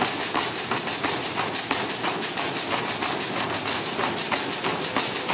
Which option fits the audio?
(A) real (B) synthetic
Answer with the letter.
A